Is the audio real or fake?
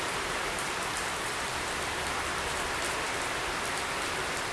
fake